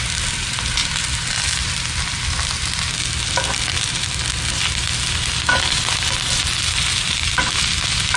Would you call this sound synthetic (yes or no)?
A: no